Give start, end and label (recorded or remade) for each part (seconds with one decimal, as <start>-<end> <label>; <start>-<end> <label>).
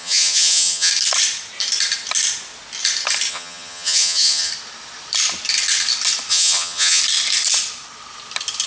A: 0.0-0.9 remade; 0.9-3.3 recorded; 3.3-4.5 remade; 4.5-6.3 recorded; 6.3-7.0 remade; 7.0-8.7 recorded